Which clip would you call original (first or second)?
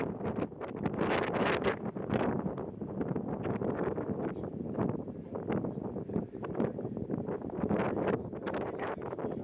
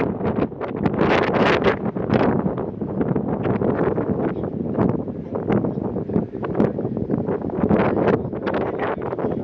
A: second